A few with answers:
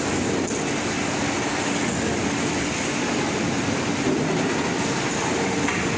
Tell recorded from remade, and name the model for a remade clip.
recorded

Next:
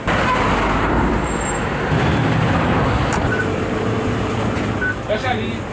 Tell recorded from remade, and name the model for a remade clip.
recorded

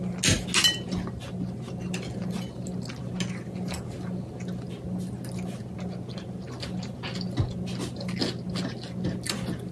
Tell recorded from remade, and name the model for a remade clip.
recorded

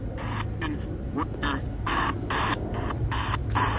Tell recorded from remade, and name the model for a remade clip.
recorded